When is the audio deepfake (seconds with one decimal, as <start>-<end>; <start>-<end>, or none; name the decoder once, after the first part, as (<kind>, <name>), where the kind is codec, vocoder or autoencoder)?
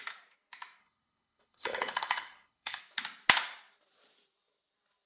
0.8-2.8 (codec, HILCodec)